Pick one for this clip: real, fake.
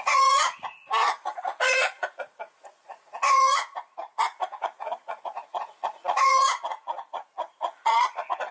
fake